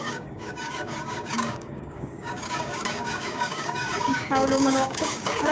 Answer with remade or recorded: remade